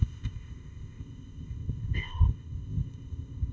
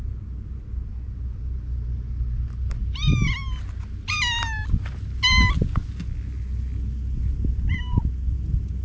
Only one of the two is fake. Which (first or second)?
first